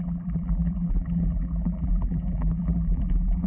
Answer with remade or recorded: remade